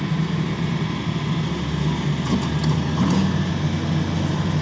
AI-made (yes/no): no